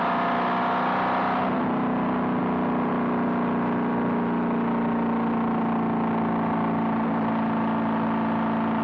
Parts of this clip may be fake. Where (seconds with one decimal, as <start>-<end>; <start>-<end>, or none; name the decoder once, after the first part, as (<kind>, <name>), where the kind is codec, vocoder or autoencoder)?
none